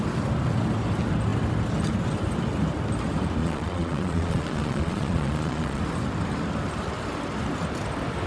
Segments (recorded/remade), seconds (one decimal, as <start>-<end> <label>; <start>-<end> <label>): 0.0-3.4 recorded; 3.4-5.8 remade; 5.8-8.3 recorded